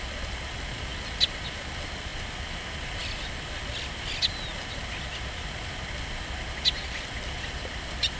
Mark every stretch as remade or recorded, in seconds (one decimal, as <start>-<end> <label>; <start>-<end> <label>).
0.0-8.2 recorded

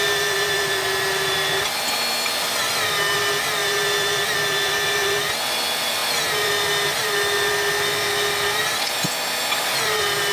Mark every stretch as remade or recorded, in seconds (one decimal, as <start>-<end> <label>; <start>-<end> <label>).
0.0-10.3 recorded

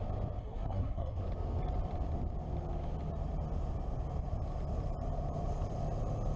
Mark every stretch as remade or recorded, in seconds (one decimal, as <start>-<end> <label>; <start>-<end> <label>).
0.0-0.4 recorded; 0.4-1.2 remade; 1.2-6.4 recorded

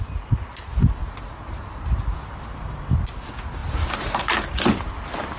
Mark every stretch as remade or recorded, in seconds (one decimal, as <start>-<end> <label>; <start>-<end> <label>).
0.0-1.0 recorded; 1.0-2.8 remade; 2.8-3.6 recorded; 3.6-4.9 remade; 4.9-5.4 recorded

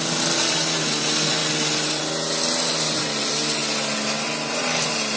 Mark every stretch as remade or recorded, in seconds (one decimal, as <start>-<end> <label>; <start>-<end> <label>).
0.0-5.2 recorded

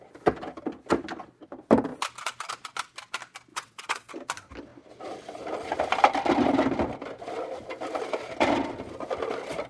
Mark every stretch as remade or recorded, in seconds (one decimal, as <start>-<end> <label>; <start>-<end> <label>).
0.0-3.5 recorded; 3.5-4.1 remade; 4.1-9.7 recorded